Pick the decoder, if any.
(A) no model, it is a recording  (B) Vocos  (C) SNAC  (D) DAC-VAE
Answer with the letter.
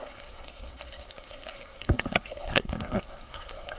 C